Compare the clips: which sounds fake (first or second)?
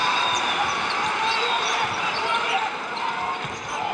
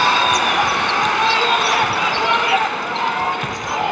first